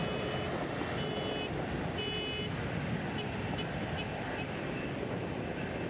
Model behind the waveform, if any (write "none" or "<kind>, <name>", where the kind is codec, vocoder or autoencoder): none